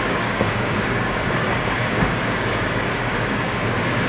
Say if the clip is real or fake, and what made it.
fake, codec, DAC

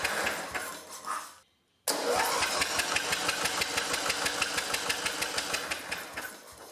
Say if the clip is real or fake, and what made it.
real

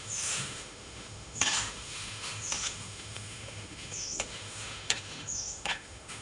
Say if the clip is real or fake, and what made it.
fake, autoencoder, DAC-VAE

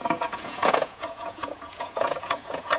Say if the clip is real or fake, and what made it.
fake, vocoder, Vocos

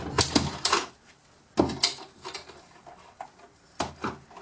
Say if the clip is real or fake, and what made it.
real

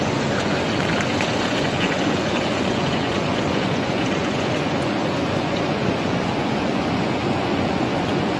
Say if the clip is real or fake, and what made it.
fake, vocoder, Vocos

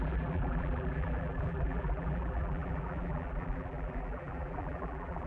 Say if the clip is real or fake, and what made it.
fake, vocoder, BigVGAN v2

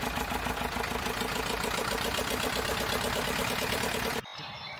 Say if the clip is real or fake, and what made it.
real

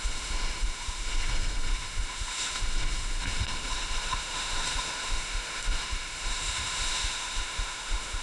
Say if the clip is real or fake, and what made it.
fake, autoencoder, DAC-VAE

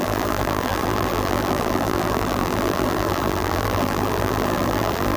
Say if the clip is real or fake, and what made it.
fake, vocoder, BigVGAN v2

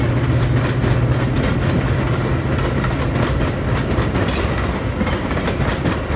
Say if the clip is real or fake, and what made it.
real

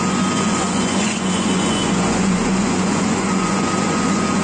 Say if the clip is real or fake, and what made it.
fake, vocoder, Vocos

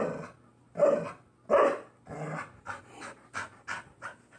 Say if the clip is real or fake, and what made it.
real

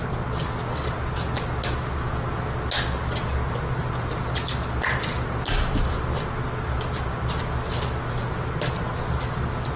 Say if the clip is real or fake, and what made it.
real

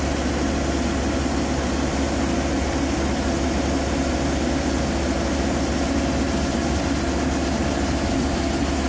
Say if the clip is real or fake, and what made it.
real